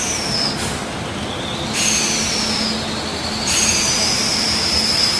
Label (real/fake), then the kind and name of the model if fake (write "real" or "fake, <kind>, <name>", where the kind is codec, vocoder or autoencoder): real